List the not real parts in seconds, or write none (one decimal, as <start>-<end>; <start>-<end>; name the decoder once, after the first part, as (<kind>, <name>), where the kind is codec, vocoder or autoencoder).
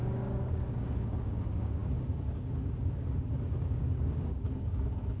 0.0-5.2 (codec, DAC)